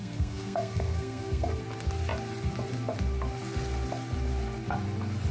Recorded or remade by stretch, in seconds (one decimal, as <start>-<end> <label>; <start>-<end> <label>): 0.0-1.6 remade; 1.6-5.3 recorded